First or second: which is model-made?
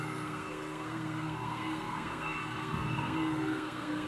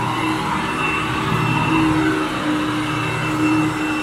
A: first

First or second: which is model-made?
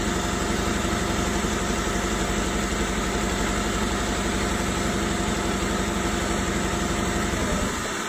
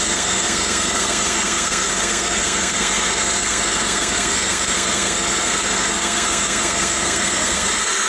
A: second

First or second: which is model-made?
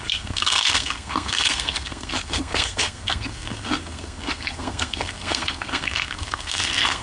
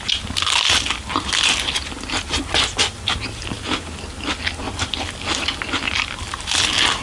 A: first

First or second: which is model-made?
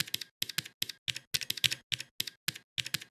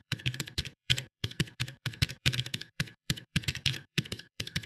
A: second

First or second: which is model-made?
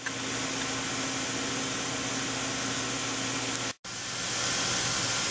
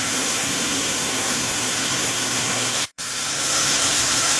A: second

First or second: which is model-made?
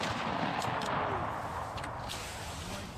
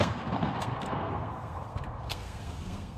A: second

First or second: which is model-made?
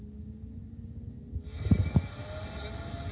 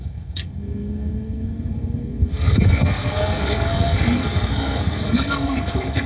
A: second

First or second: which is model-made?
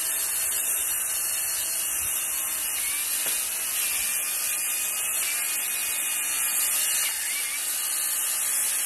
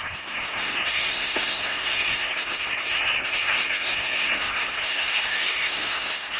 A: second